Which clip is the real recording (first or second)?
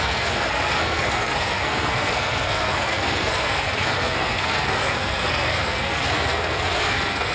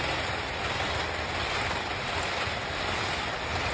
second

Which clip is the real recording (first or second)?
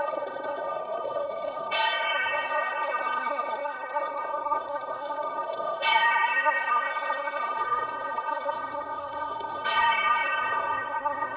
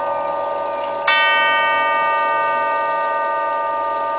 second